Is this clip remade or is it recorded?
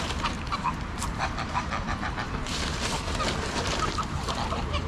remade